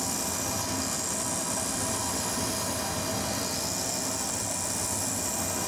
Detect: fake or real real